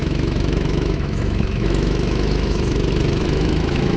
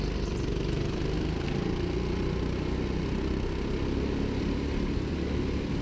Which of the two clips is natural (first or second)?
second